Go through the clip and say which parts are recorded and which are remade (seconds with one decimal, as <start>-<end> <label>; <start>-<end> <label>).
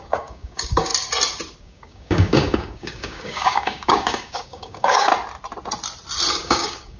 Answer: 0.0-0.9 remade; 0.9-1.6 recorded; 1.6-5.1 remade; 5.1-6.3 recorded; 6.3-7.0 remade